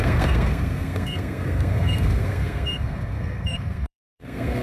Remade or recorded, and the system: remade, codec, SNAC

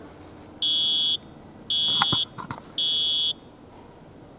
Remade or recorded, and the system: recorded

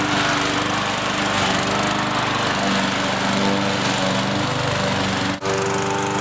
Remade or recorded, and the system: recorded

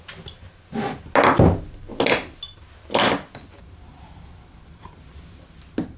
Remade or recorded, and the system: recorded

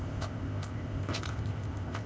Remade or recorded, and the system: remade, codec, ZipCodec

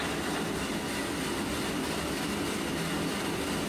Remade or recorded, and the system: recorded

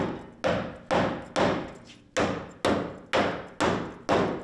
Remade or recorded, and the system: recorded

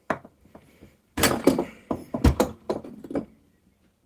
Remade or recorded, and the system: recorded